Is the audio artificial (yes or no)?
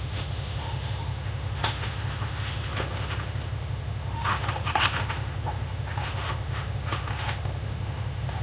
yes